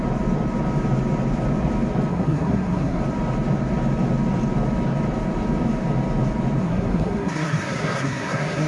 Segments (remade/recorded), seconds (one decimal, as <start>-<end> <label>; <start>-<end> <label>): 0.0-2.1 recorded; 2.1-3.0 remade; 3.0-6.6 recorded; 6.6-8.7 remade